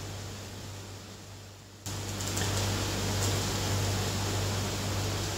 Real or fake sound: real